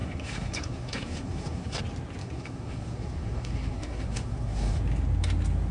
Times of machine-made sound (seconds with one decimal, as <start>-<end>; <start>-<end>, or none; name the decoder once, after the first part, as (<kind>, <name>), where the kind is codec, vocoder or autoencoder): 0.0-1.8 (codec, SNAC); 2.2-4.8